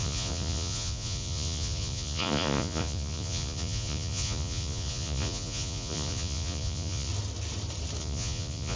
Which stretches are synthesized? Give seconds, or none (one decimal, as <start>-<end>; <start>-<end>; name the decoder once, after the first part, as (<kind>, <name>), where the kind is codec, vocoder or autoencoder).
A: 0.0-7.1 (vocoder, Vocos); 8.0-8.8